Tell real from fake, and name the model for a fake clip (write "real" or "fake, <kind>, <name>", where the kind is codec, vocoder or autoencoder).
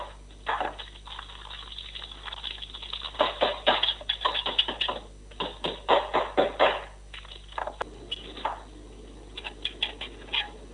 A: real